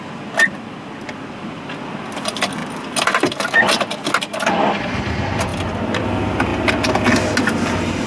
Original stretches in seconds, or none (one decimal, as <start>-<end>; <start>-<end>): 0.0-5.5; 6.0-8.1